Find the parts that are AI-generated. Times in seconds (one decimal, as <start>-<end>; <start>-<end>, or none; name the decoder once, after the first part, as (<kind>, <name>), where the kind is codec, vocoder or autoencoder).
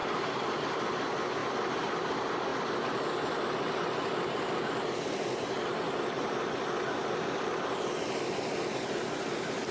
0.0-0.6 (vocoder, BigVGAN v2); 1.4-1.9